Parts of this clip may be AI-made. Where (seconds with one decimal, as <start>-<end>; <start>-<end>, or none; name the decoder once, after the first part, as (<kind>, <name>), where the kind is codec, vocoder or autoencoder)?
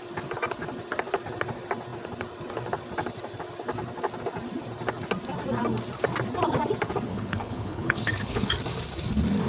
7.1-8.5 (codec, HILCodec)